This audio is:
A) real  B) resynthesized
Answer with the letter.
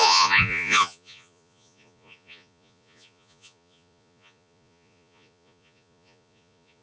B